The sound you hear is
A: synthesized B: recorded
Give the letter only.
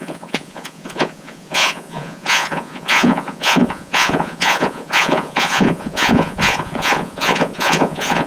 A